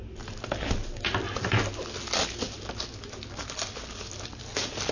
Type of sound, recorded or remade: recorded